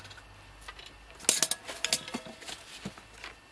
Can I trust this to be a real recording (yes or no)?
yes